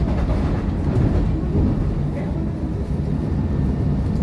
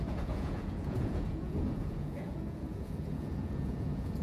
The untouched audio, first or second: first